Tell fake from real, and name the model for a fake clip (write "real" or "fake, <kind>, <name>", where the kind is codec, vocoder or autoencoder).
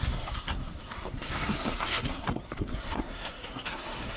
fake, codec, SNAC